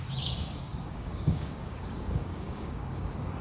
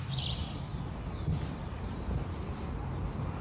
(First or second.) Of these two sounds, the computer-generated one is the first